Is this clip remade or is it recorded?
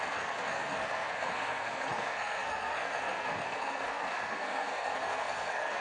remade